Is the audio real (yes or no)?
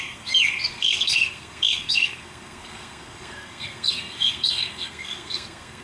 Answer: no